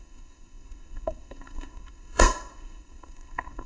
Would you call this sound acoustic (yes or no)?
no